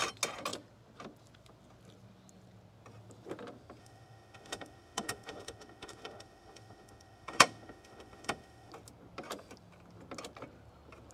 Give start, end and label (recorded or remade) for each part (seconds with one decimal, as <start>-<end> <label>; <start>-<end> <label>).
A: 0.0-3.8 recorded; 3.8-8.7 remade; 8.7-11.1 recorded